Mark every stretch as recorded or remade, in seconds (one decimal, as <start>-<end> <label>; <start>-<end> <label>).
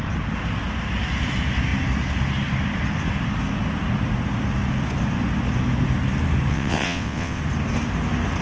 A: 0.0-6.5 recorded; 6.5-7.4 remade; 7.4-8.4 recorded